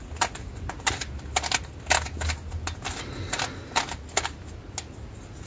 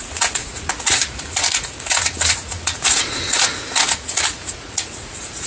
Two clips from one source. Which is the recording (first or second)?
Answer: first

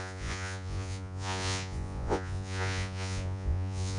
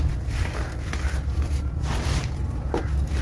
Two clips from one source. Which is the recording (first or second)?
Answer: second